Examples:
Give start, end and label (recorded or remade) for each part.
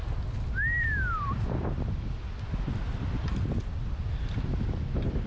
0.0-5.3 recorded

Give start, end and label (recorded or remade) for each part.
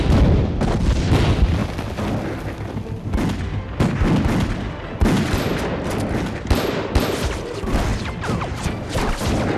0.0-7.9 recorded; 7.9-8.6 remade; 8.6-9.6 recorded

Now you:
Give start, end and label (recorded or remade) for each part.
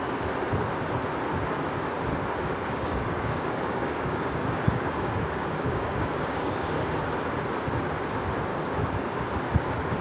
0.0-2.6 recorded; 2.6-6.9 remade; 6.9-8.5 recorded; 8.5-9.2 remade; 9.2-10.0 recorded